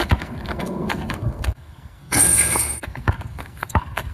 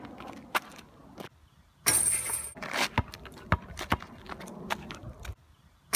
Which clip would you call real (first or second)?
second